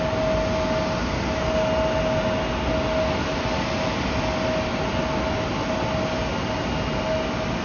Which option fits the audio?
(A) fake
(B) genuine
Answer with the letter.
B